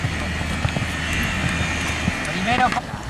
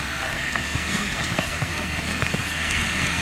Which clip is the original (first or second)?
first